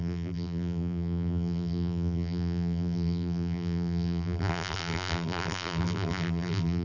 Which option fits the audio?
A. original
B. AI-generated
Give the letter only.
B